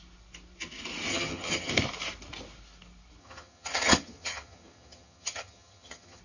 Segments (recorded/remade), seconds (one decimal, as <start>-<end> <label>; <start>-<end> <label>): 0.0-1.1 recorded; 1.1-1.7 remade; 1.7-3.2 recorded; 3.2-6.2 remade